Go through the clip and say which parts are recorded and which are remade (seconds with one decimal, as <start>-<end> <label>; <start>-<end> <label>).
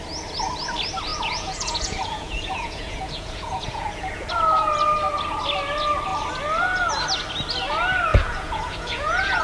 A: 0.0-1.1 recorded; 1.1-4.3 remade; 4.3-8.1 recorded; 8.1-9.4 remade